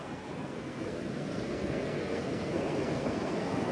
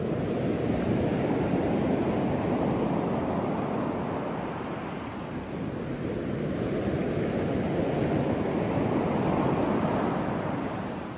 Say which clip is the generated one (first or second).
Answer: first